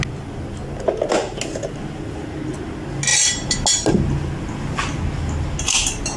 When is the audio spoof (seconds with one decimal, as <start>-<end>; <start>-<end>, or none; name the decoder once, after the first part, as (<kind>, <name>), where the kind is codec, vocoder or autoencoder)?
none